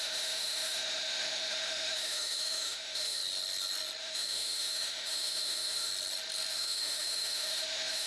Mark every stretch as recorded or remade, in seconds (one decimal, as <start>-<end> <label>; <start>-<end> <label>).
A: 0.0-3.2 remade; 3.2-4.0 recorded; 4.0-5.9 remade; 5.9-6.5 recorded; 6.5-8.1 remade